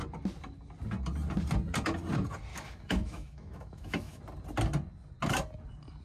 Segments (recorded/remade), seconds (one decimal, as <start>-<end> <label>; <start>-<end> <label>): 0.0-2.5 recorded; 2.5-4.2 remade; 4.2-6.0 recorded